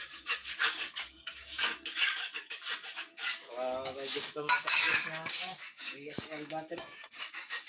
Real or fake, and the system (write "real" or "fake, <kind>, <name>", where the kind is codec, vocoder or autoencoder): fake, codec, DAC